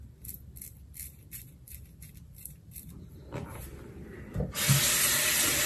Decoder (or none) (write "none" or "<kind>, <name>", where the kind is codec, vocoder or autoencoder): vocoder, BigVGAN v2